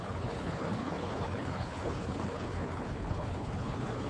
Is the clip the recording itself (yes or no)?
no